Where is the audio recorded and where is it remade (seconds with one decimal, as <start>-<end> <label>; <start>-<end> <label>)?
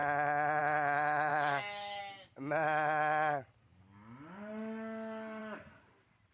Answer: 0.0-1.3 recorded; 1.3-2.0 remade; 2.0-6.3 recorded